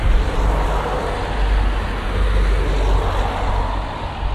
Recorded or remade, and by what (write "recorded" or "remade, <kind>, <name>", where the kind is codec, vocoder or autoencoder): recorded